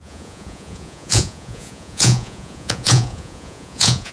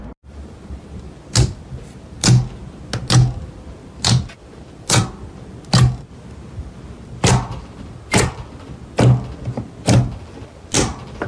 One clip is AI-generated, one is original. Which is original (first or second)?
second